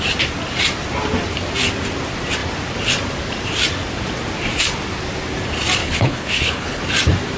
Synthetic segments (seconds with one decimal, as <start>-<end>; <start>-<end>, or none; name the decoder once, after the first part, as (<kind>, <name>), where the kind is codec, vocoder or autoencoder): 5.8-6.8 (codec, HILCodec)